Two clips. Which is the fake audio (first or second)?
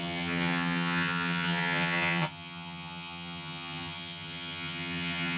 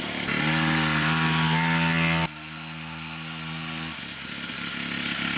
first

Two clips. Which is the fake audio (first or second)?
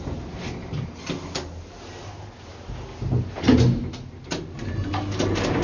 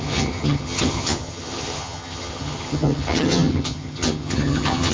second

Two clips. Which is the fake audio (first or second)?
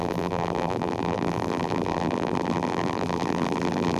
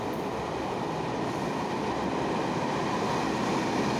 first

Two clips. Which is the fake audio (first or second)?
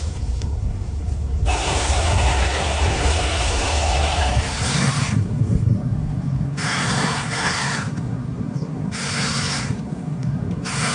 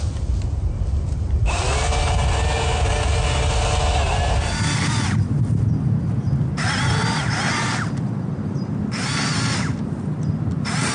first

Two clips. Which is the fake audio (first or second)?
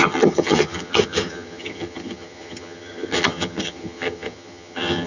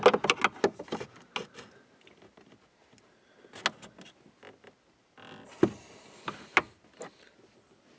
first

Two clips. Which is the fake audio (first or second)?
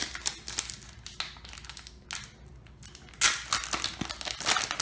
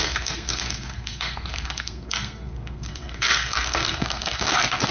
second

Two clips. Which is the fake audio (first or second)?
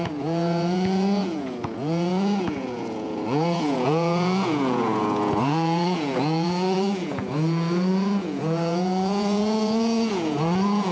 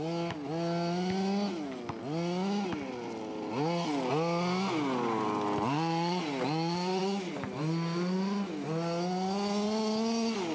first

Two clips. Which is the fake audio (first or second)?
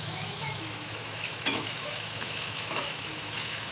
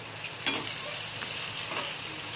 first